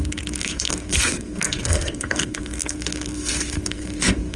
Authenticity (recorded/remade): remade